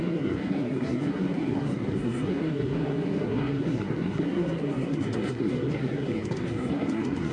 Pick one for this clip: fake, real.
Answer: fake